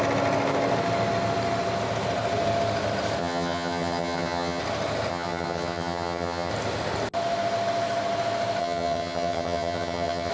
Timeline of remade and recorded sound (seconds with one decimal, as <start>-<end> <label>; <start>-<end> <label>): 0.0-3.2 recorded; 3.2-4.6 remade; 4.6-5.1 recorded; 5.1-6.5 remade; 6.5-8.6 recorded; 8.6-10.3 remade